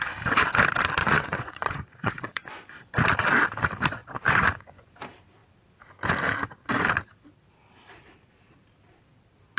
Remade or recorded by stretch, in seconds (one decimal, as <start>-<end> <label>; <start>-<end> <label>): 0.0-1.0 recorded; 1.0-2.7 remade; 2.7-4.0 recorded; 4.0-5.0 remade; 5.0-9.6 recorded